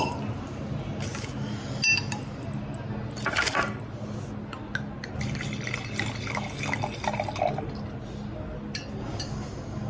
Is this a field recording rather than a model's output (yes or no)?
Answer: yes